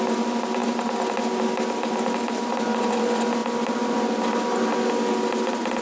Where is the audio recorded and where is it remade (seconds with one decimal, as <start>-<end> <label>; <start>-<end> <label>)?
0.0-5.8 recorded